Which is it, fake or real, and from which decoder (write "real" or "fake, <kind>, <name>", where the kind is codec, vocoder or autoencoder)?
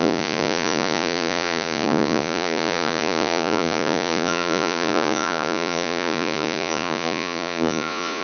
fake, vocoder, Vocos